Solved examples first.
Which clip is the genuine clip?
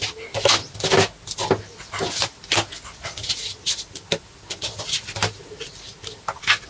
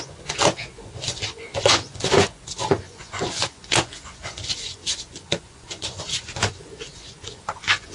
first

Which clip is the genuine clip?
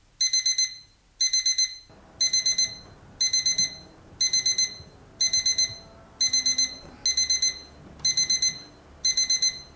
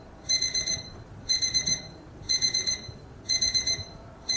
first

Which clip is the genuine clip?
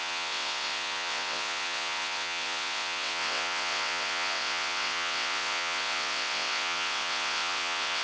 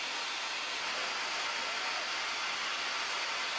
second